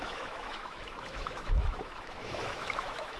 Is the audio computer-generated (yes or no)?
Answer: yes